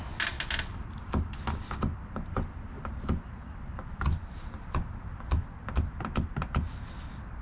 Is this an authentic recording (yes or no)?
yes